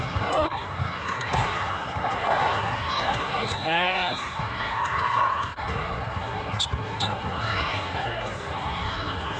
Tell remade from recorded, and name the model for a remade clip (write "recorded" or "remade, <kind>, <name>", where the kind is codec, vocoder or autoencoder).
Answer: remade, codec, SNAC